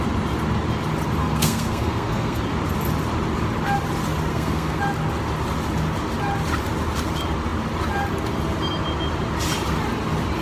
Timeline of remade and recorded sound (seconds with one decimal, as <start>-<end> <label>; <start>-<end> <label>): 0.0-1.2 recorded; 1.2-2.4 remade; 2.4-4.3 recorded; 4.3-4.8 remade; 4.8-10.4 recorded